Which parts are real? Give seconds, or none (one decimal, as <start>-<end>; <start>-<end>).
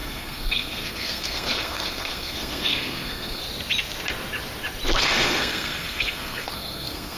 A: 3.4-5.0